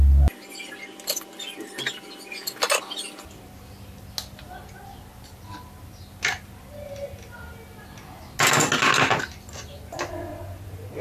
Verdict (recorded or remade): recorded